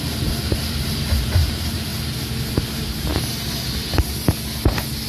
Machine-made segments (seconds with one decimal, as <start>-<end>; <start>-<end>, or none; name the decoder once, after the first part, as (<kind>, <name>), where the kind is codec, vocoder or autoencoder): 0.0-1.9 (vocoder, BigVGAN v2); 2.5-3.1